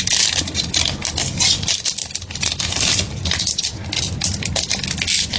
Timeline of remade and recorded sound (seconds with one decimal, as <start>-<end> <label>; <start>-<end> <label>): 0.0-5.4 recorded